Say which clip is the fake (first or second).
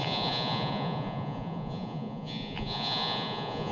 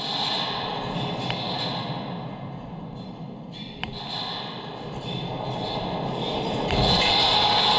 first